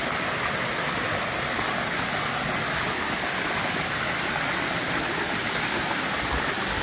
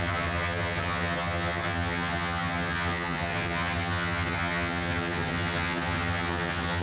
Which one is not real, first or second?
second